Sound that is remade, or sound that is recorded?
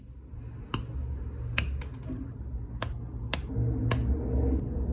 recorded